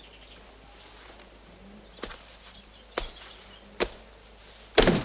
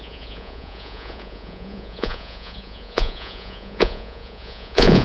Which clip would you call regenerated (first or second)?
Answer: second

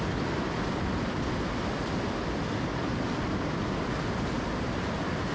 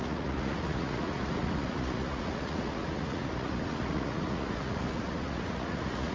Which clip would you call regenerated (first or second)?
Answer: second